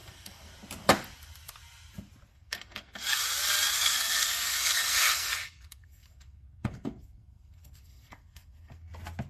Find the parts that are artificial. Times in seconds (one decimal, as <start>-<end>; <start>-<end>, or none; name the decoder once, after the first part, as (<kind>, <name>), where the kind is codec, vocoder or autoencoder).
0.0-0.5 (codec, SNAC); 2.3-3.2; 3.8-8.9